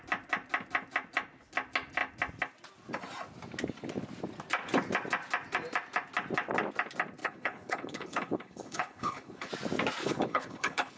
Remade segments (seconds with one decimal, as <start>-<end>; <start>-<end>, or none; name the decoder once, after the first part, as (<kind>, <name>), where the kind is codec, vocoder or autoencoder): 7.2-9.5 (codec, HILCodec); 10.0-11.0